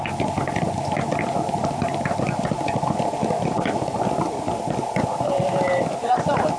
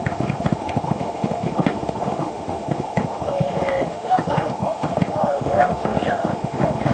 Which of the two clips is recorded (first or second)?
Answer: first